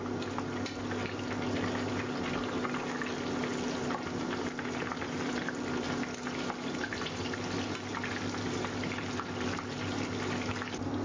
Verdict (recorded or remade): recorded